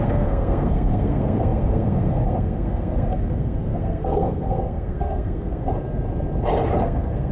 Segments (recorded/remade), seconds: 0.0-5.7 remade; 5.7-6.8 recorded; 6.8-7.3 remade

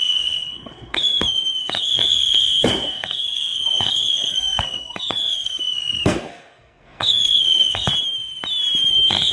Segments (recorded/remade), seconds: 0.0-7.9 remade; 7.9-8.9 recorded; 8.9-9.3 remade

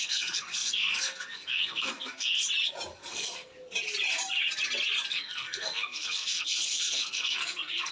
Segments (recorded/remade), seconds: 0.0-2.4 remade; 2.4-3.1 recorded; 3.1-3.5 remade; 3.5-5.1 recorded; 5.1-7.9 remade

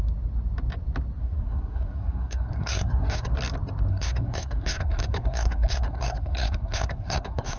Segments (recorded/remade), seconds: 0.0-1.2 recorded; 1.2-3.3 remade; 3.3-3.9 recorded; 3.9-7.6 remade